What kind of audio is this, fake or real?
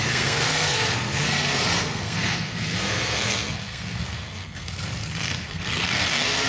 fake